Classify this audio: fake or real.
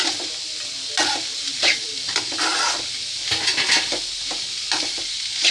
real